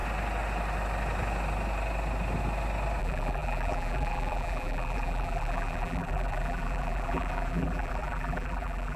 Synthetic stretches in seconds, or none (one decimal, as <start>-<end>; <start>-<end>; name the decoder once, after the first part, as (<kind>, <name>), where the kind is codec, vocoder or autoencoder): 3.0-9.0 (vocoder, BigVGAN v2)